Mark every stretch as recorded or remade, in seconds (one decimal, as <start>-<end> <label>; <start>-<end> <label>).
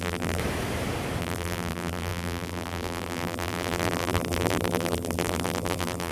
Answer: 0.0-0.4 remade; 0.4-1.2 recorded; 1.2-6.1 remade